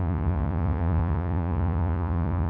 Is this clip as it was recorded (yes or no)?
no